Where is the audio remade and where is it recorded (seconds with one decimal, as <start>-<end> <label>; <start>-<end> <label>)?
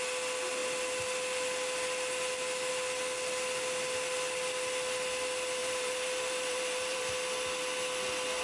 0.0-5.6 recorded; 5.6-7.0 remade; 7.0-8.4 recorded